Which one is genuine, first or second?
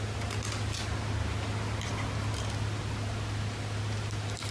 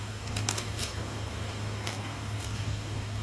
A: first